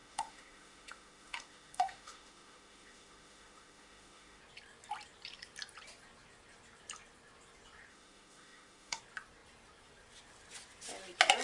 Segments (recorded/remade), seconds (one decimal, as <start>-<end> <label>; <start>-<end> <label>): 0.0-4.4 remade; 4.4-7.9 recorded; 7.9-9.0 remade; 9.0-11.4 recorded